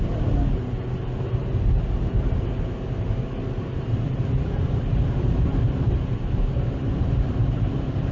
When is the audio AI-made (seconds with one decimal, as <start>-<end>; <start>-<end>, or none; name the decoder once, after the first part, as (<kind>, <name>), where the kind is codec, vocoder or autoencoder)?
3.7-8.1 (vocoder, BigVGAN v2)